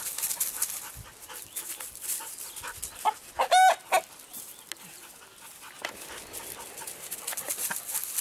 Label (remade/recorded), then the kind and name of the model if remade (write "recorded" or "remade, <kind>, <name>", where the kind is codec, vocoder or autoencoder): recorded